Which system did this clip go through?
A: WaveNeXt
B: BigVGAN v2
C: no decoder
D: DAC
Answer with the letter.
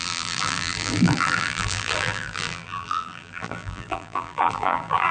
B